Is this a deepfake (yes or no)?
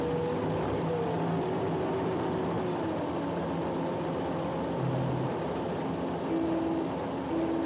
no